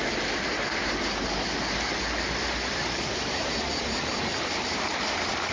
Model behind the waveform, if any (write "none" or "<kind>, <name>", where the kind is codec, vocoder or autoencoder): none